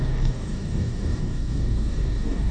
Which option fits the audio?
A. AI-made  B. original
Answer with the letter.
A